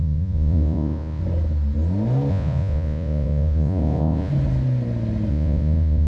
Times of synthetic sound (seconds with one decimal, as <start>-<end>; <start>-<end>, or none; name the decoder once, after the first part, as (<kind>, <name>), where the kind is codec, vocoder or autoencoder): 0.0-1.2 (vocoder, Vocos); 2.3-4.3; 5.3-6.1